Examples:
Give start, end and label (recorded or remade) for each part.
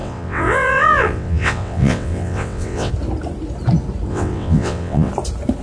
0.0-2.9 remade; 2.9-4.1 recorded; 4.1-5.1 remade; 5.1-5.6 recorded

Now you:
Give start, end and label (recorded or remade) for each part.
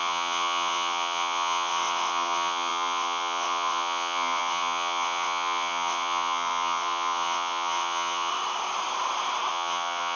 0.0-8.3 remade; 8.3-9.5 recorded; 9.5-10.2 remade